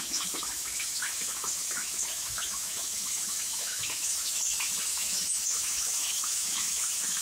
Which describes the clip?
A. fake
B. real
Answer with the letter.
A